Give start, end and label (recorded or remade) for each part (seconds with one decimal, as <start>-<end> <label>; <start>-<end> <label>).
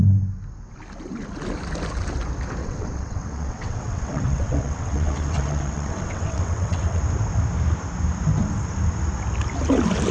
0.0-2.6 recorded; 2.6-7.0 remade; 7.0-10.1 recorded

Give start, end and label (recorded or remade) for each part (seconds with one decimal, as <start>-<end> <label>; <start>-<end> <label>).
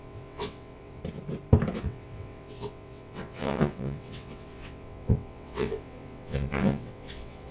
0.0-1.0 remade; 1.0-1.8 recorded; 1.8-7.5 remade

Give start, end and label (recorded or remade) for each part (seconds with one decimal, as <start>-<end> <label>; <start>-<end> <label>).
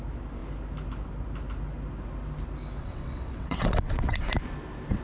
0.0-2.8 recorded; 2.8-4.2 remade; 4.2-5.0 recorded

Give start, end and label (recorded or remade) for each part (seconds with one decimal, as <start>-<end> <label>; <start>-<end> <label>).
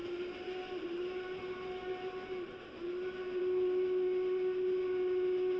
0.0-5.6 recorded